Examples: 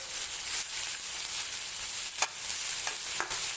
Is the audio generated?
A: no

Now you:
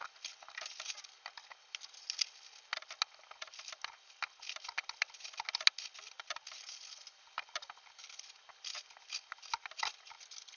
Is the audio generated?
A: no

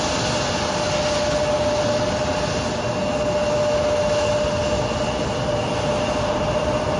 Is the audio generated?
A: no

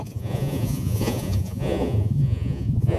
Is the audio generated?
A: yes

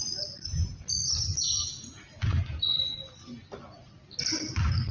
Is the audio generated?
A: no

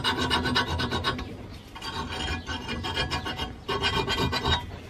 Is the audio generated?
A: no